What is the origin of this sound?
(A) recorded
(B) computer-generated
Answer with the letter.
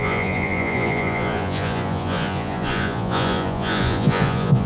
B